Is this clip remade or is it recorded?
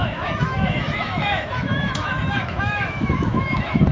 remade